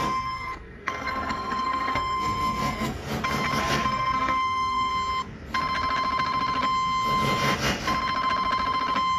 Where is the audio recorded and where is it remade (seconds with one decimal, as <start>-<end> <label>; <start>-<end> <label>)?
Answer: 0.0-3.0 remade; 3.0-3.6 recorded; 3.6-4.9 remade; 4.9-9.2 recorded